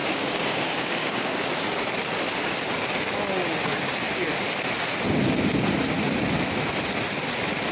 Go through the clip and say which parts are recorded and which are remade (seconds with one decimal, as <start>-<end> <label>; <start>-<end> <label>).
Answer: 0.0-1.5 remade; 1.5-7.7 recorded